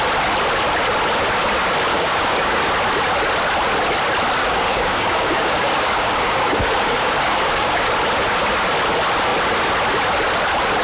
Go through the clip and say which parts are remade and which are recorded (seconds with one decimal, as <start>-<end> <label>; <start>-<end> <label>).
0.0-1.9 recorded; 1.9-2.6 remade; 2.6-4.4 recorded; 4.4-7.9 remade; 7.9-10.8 recorded